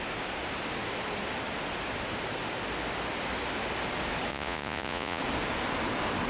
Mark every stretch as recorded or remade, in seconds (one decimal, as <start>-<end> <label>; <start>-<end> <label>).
0.0-4.3 recorded; 4.3-5.2 remade; 5.2-6.3 recorded